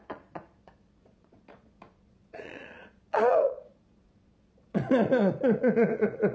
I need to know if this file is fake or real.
fake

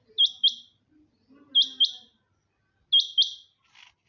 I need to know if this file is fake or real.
real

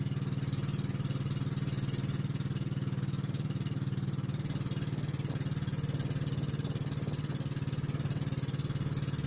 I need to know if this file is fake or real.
real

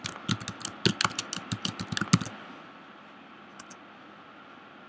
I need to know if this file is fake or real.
real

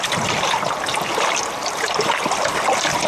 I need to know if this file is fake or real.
real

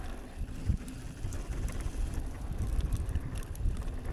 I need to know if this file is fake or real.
real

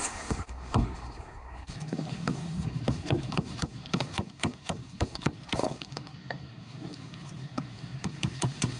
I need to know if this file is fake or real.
fake